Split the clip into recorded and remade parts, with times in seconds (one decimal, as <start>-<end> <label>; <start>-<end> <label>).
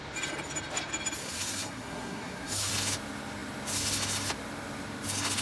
0.0-1.2 recorded; 1.2-2.7 remade; 2.7-5.4 recorded